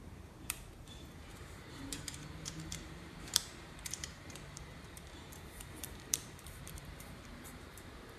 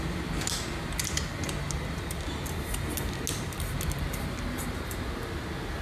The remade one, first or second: first